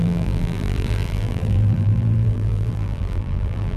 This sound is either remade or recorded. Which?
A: remade